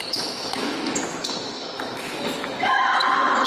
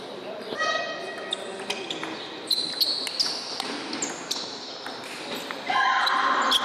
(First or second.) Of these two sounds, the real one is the second